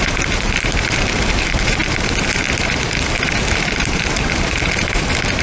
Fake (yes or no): yes